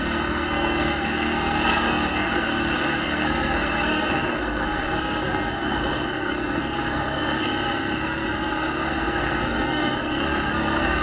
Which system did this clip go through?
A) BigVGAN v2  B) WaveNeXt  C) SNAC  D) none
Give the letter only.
C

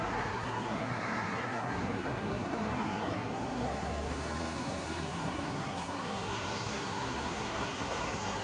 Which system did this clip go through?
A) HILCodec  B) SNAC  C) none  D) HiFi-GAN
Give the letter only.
B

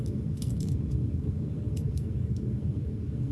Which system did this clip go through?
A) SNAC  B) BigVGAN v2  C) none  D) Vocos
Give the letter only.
A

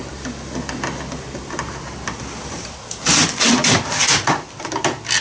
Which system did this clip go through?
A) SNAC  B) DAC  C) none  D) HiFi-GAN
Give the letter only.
C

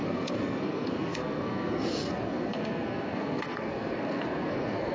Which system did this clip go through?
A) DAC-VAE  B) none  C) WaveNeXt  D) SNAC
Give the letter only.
D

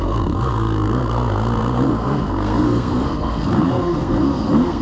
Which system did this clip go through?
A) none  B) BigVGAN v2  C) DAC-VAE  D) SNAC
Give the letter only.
D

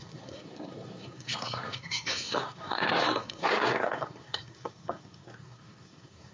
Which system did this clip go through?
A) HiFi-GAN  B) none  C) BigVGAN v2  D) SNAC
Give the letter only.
D